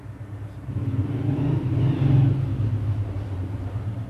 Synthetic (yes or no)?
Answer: no